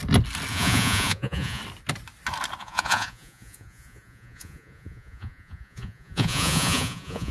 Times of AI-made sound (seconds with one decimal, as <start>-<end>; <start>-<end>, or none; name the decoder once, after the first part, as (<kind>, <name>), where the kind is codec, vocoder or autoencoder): 0.5-1.6 (vocoder, Vocos); 2.6-7.3